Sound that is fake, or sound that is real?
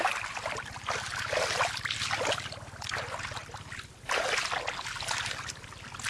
real